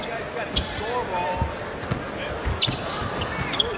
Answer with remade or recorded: recorded